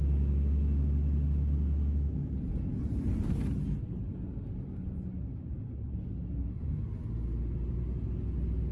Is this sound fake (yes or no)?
no